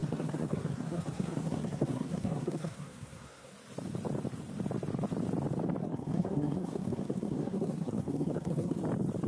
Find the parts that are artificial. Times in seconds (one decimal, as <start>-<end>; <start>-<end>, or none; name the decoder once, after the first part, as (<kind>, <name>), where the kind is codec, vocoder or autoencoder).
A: 0.0-3.5 (codec, SNAC); 5.8-8.8